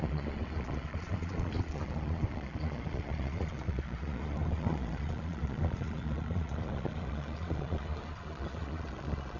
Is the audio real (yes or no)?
no